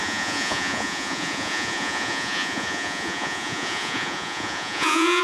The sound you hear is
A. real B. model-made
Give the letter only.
B